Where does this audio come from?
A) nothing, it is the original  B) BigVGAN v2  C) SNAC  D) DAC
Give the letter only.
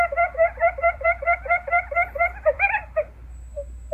B